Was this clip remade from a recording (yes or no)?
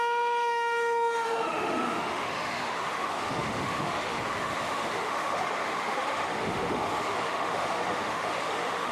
yes